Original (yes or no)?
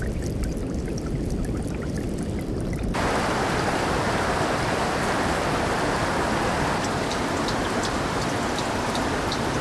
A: no